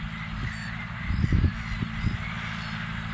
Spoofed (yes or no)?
no